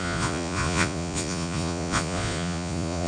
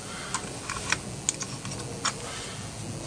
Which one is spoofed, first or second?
first